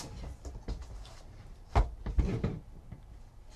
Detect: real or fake real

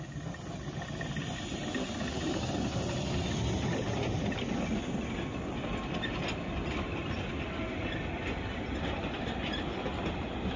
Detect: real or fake real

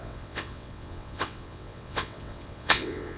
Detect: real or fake fake